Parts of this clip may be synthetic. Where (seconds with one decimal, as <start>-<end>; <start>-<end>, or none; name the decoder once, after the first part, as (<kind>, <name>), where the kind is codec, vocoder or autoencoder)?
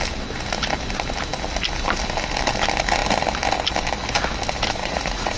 4.8-5.4 (vocoder, Vocos)